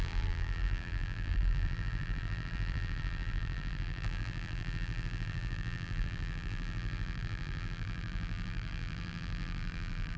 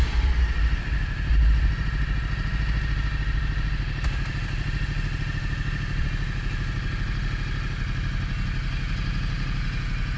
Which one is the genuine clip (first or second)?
second